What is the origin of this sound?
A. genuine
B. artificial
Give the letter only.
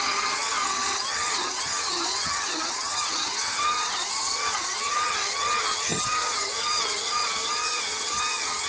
B